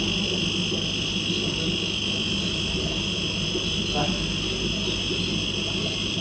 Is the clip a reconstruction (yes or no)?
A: no